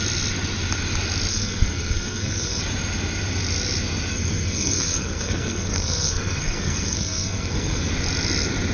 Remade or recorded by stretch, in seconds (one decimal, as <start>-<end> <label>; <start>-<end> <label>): 0.0-1.3 recorded; 1.3-2.6 remade; 2.6-4.1 recorded; 4.1-7.9 remade; 7.9-8.7 recorded